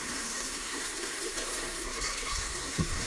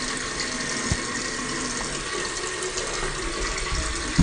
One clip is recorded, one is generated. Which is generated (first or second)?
first